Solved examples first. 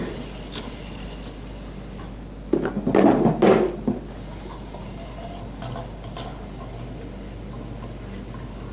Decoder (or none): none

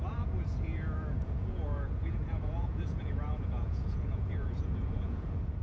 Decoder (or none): vocoder, Vocos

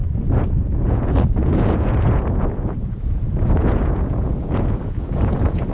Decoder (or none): vocoder, Vocos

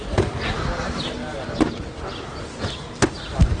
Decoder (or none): none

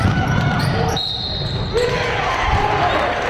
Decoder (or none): none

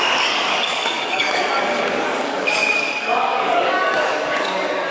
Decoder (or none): codec, DAC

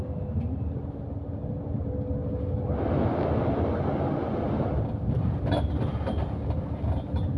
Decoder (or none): none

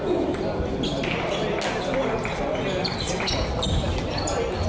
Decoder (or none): none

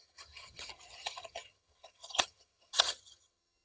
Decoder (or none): vocoder, HiFi-GAN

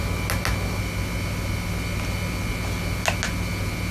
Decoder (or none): none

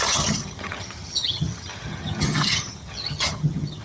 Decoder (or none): vocoder, HiFi-GAN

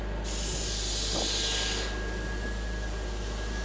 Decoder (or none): none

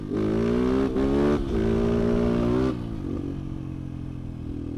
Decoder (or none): none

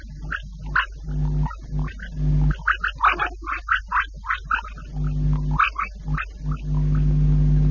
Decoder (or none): none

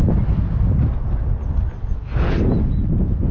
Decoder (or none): none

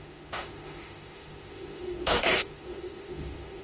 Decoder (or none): autoencoder, DAC-VAE